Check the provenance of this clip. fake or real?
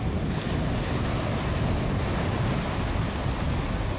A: real